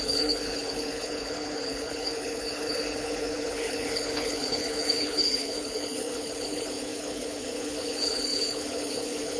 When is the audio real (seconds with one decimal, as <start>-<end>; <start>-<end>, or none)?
none